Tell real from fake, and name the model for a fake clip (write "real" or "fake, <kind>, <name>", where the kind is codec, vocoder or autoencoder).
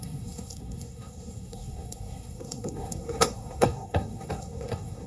fake, codec, SNAC